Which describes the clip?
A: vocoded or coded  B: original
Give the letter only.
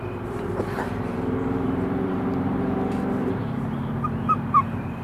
A